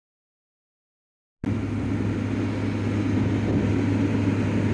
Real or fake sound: real